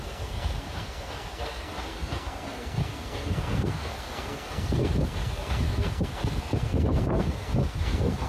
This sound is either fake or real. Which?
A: fake